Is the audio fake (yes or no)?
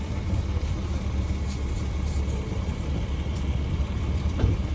no